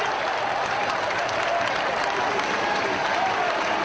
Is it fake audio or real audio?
real